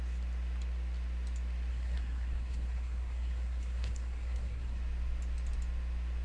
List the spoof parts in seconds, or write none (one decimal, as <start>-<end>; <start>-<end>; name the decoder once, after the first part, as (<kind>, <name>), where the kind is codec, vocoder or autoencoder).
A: 1.7-4.8 (codec, SNAC)